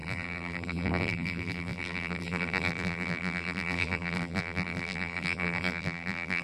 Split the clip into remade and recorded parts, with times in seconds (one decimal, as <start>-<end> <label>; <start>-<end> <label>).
0.0-6.4 remade